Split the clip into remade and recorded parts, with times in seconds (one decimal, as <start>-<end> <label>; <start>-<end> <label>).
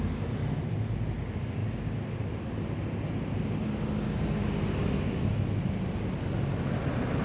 0.0-7.2 recorded